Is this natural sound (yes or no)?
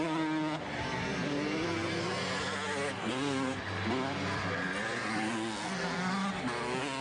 yes